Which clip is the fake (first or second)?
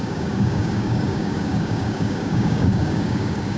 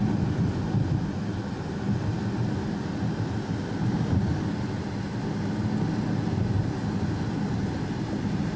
first